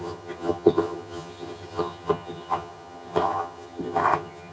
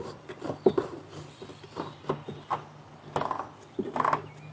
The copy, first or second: first